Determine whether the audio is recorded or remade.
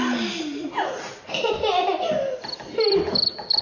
recorded